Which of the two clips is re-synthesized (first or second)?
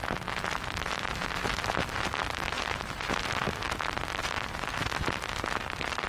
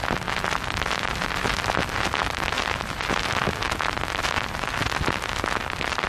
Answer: first